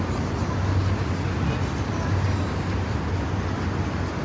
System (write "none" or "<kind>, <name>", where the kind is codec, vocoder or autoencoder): none